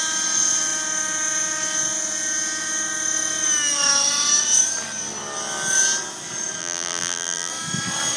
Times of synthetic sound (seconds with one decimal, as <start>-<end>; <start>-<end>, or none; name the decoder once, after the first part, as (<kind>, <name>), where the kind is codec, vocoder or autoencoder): 6.6-7.5 (vocoder, BigVGAN v2)